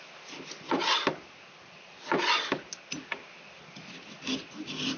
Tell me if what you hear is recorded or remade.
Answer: recorded